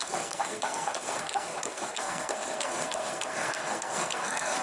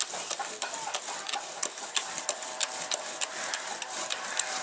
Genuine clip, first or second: second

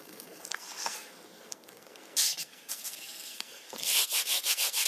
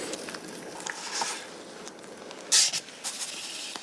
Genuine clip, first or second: second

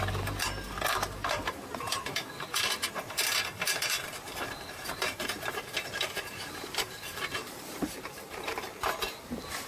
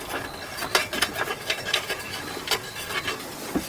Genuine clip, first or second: second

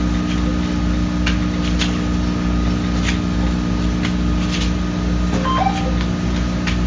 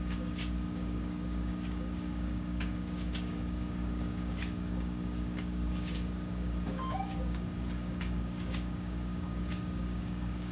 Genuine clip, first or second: first